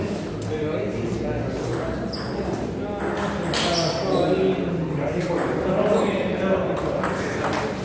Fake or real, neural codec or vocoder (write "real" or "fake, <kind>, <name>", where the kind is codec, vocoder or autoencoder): real